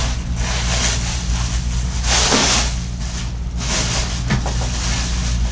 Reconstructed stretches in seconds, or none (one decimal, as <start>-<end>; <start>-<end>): none

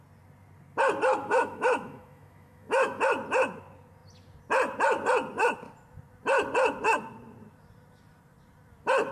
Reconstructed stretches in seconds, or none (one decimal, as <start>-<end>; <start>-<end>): 1.2-3.0

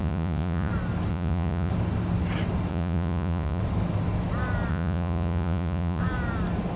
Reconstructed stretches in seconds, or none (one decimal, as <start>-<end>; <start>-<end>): 0.0-0.7; 1.1-1.7; 2.7-3.6; 4.7-6.0